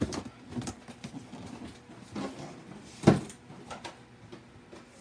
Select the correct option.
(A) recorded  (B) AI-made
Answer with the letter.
A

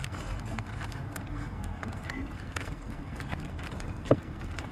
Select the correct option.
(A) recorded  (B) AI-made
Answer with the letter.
B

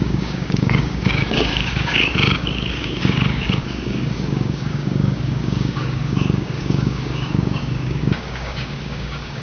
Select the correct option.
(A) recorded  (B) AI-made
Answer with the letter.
B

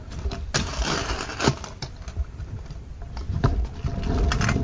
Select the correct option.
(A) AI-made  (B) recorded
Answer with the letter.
B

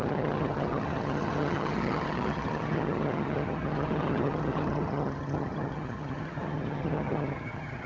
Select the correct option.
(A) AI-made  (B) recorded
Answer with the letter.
A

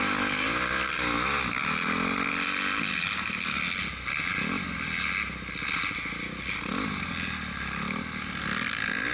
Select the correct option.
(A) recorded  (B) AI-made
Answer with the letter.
A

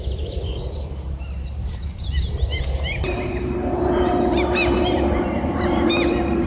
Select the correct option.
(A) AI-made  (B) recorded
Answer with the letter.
A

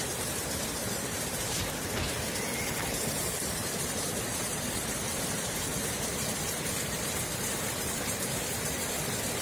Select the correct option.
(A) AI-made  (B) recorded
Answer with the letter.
A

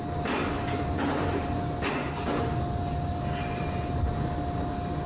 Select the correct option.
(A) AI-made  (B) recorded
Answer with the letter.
B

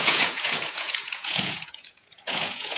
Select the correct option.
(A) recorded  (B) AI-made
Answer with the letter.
B